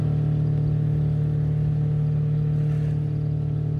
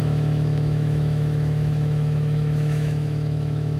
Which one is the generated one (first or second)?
second